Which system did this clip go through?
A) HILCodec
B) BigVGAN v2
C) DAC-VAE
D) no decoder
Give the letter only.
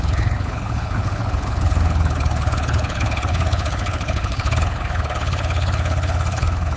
A